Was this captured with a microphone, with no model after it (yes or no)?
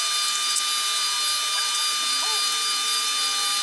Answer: yes